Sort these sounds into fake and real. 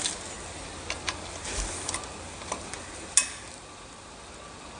real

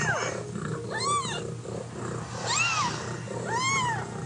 real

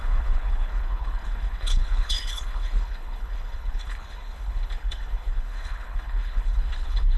fake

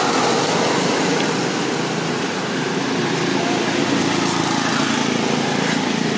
real